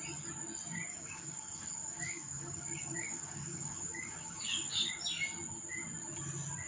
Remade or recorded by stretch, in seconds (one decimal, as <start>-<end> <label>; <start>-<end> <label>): 0.0-0.9 recorded; 0.9-4.9 remade; 4.9-6.7 recorded